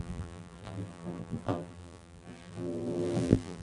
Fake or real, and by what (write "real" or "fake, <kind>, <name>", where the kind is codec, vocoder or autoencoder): fake, vocoder, BigVGAN v2